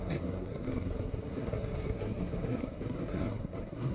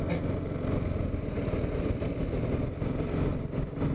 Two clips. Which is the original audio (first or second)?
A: second